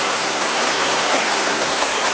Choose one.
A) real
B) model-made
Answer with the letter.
B